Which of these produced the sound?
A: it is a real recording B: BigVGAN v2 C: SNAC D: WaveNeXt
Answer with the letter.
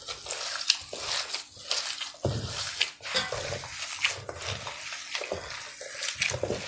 A